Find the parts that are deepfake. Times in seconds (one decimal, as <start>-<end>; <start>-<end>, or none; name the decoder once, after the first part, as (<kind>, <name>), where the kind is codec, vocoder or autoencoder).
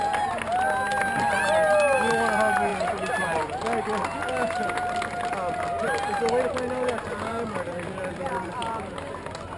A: none